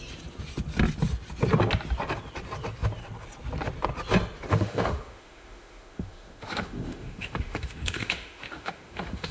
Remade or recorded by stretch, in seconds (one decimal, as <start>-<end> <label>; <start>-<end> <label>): 0.0-4.5 recorded; 4.5-9.3 remade